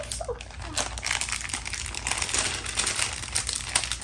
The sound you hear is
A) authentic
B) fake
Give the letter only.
A